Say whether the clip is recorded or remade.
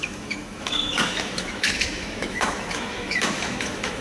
remade